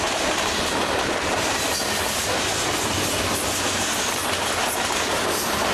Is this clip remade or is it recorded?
recorded